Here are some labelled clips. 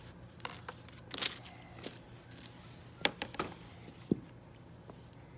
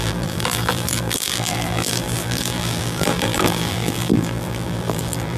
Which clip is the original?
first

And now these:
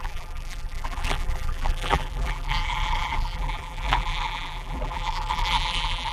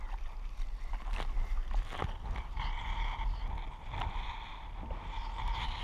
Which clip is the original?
second